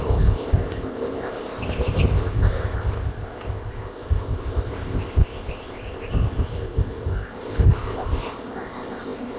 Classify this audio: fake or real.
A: fake